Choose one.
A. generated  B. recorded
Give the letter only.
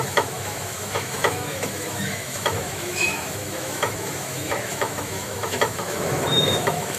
A